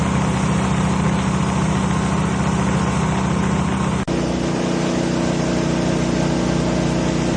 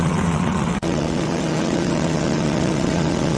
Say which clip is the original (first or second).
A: first